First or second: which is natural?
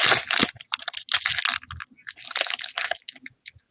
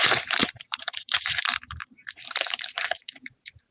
first